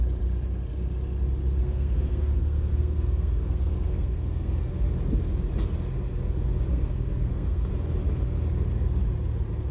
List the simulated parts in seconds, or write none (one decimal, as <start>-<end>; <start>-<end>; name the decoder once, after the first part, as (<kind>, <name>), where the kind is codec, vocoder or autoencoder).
1.6-4.7 (codec, SNAC); 6.7-7.7